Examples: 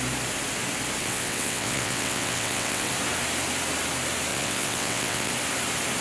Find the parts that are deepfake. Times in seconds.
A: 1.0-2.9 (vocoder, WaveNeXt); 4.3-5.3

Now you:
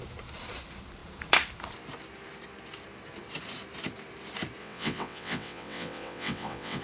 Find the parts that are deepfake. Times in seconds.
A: 4.6-6.8 (vocoder, WaveNeXt)

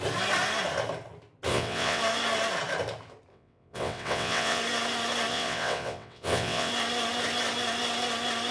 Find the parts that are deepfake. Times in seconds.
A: 1.5-2.0 (vocoder, WaveNeXt); 3.3-4.6; 5.3-6.7

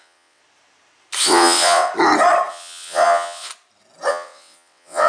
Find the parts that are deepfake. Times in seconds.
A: 0.0-0.4 (vocoder, WaveNeXt); 1.2-1.9; 2.5-3.5; 4.1-5.1

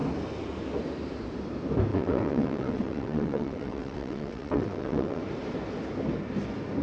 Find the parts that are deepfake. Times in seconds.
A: 1.9-5.2 (vocoder, WaveNeXt)

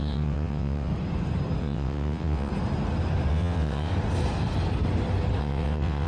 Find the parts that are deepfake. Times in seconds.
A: 0.0-0.9 (vocoder, WaveNeXt); 1.6-2.5; 3.3-3.9; 5.4-6.1

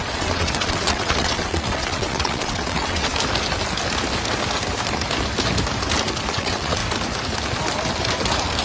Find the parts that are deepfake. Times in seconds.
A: 0.0-3.1 (vocoder, WaveNeXt); 6.3-6.8